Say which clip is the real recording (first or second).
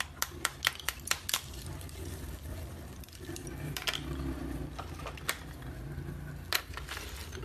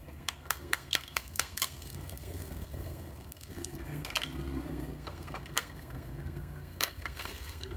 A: first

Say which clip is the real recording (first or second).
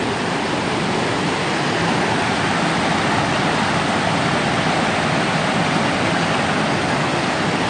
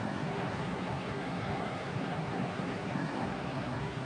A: first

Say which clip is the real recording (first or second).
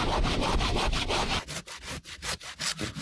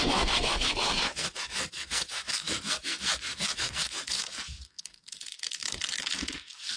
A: first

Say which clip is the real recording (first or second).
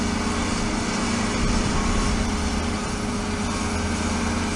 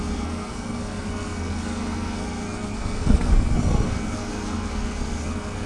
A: first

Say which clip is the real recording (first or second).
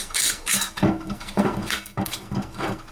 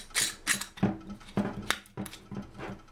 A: second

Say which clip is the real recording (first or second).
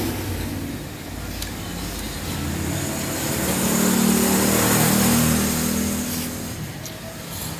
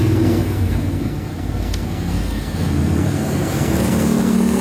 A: first